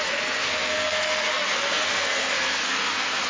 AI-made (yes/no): yes